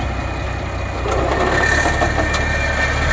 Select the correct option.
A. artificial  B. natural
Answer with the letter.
B